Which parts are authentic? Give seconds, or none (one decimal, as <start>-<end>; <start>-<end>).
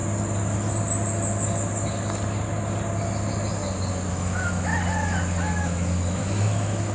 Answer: 0.0-4.1; 4.7-5.6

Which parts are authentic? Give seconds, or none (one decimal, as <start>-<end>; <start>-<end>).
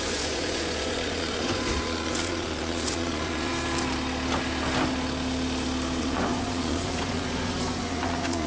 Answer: 3.5-6.0